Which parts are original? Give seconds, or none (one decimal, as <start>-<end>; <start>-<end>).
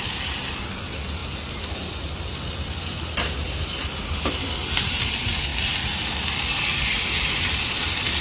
0.0-8.2